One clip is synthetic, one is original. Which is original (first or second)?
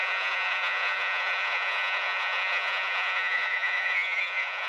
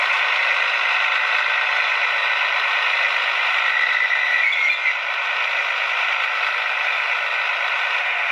second